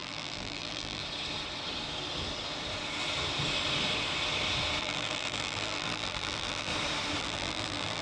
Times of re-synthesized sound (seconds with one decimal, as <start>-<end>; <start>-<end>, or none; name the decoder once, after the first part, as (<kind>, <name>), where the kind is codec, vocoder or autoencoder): 0.0-1.0 (vocoder, BigVGAN v2); 4.8-6.7; 7.2-8.0